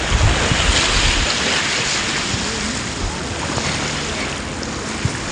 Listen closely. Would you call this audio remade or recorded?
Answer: recorded